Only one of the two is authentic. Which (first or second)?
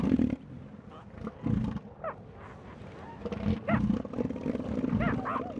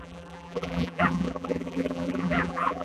first